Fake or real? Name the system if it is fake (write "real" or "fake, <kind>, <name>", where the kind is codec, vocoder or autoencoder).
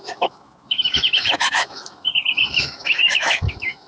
fake, autoencoder, DAC-VAE